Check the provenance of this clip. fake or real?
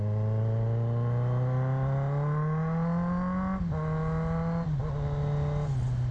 real